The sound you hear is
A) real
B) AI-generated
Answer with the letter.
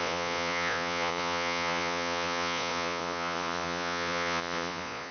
B